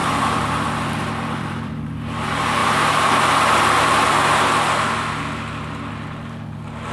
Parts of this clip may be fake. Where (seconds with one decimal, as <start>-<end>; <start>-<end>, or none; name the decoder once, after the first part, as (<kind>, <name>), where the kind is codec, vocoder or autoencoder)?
0.0-1.7 (vocoder, BigVGAN v2)